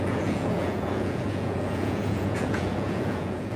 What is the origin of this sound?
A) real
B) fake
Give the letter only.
B